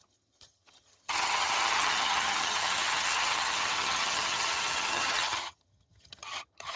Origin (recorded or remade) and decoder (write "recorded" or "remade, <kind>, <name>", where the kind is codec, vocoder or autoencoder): remade, vocoder, HiFi-GAN